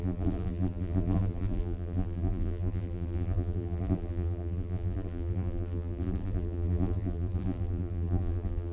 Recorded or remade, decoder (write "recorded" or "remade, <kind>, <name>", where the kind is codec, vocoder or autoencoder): remade, vocoder, BigVGAN v2